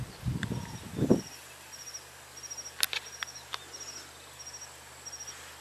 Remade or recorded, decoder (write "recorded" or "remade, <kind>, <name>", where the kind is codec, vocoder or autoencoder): recorded